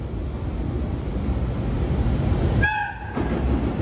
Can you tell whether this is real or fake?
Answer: real